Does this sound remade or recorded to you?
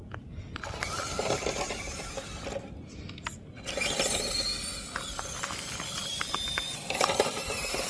recorded